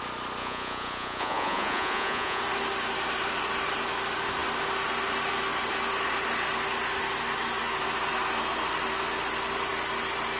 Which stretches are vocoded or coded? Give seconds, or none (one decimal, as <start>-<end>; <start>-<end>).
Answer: 0.4-2.4